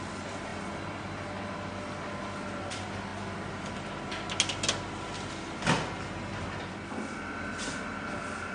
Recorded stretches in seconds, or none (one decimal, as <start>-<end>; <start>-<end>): 0.0-8.5